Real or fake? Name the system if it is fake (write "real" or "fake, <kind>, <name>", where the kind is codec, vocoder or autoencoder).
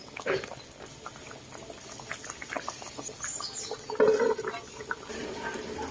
real